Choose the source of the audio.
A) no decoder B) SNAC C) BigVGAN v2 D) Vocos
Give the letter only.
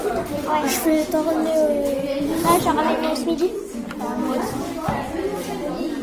A